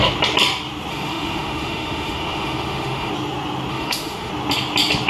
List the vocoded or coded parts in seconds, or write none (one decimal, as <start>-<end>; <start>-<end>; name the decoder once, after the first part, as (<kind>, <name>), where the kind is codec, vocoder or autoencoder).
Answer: 0.9-3.1 (autoencoder, DAC-VAE); 3.7-4.3